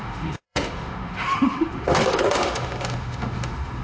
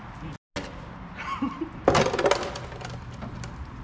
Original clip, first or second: second